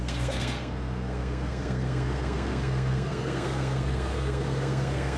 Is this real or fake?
fake